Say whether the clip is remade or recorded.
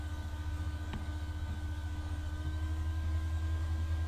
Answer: remade